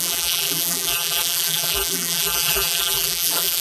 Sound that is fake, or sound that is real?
fake